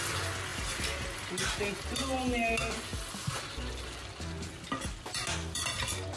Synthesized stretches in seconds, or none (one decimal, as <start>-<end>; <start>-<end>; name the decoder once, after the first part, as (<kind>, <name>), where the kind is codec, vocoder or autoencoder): none